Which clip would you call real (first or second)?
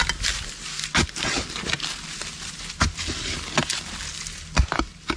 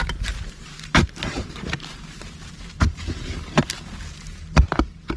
first